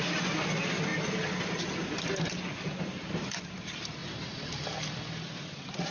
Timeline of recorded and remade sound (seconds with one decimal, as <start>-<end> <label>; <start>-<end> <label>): 0.0-5.9 recorded